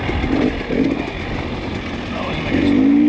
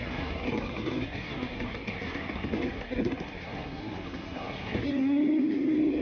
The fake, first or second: second